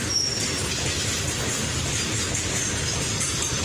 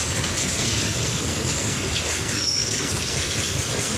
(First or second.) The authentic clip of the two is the first